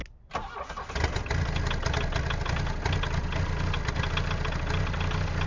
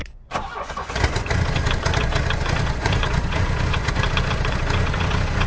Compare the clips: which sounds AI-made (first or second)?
second